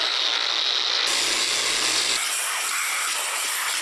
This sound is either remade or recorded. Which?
recorded